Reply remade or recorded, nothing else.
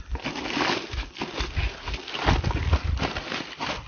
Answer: recorded